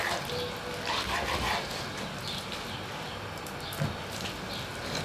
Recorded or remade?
recorded